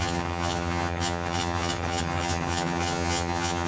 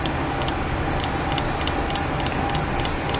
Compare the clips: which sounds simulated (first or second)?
first